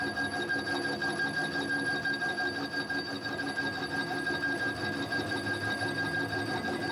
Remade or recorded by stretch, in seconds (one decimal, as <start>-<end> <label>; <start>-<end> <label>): 0.0-6.9 recorded